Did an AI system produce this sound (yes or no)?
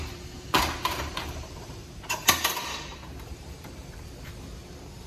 yes